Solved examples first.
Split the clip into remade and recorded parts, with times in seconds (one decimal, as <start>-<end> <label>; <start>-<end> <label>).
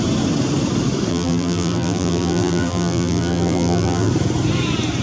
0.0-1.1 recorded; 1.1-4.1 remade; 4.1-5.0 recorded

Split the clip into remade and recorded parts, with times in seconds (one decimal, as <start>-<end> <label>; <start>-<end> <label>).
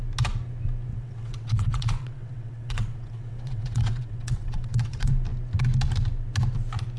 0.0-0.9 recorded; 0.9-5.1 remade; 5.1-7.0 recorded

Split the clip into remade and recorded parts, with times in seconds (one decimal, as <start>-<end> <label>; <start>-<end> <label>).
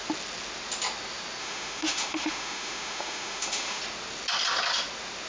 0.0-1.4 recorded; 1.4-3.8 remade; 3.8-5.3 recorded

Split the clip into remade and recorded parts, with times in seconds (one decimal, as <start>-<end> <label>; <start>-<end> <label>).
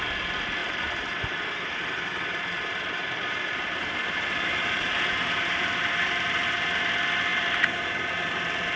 0.0-0.6 recorded; 0.6-5.8 remade; 5.8-7.3 recorded; 7.3-7.9 remade; 7.9-8.8 recorded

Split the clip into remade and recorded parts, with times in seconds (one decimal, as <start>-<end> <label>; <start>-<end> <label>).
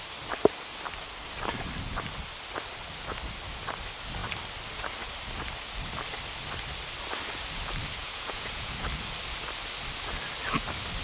0.0-8.0 recorded; 8.0-8.7 remade; 8.7-11.0 recorded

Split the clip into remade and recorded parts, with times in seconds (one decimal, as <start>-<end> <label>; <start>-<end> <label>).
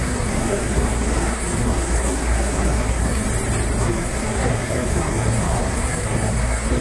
0.0-3.2 remade; 3.2-3.8 recorded; 3.8-6.8 remade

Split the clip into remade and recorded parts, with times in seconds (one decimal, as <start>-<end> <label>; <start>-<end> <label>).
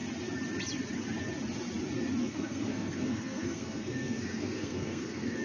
0.0-2.2 recorded; 2.2-5.4 remade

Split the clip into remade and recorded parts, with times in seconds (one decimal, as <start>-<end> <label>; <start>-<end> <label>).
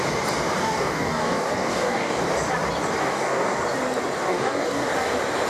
0.0-0.6 recorded; 0.6-2.2 remade; 2.2-3.0 recorded; 3.0-3.6 remade; 3.6-4.2 recorded; 4.2-4.9 remade; 4.9-5.5 recorded